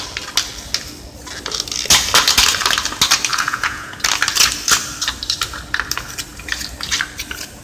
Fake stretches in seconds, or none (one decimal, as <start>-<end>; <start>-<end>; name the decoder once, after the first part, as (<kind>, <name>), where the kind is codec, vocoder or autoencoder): 3.3-4.0 (vocoder, Vocos)